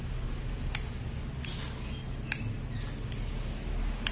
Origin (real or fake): real